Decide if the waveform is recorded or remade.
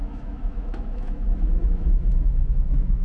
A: remade